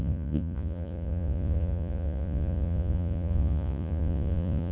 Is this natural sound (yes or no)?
no